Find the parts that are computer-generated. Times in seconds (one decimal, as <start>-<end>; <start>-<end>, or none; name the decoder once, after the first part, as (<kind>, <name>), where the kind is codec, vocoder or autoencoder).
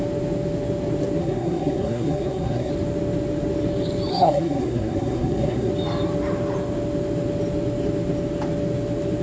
1.2-2.7 (codec, SNAC); 4.1-5.7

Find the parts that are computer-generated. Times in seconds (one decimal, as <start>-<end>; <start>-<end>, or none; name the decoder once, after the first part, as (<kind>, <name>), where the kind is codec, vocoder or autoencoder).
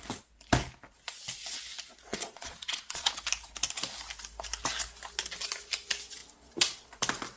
2.1-3.1 (vocoder, Vocos)